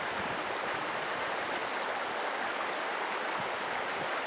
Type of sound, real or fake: real